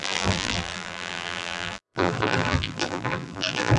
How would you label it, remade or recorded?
remade